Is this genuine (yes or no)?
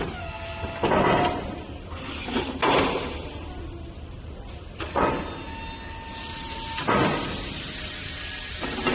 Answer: yes